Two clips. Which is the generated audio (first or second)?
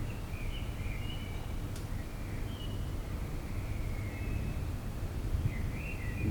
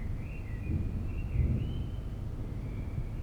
first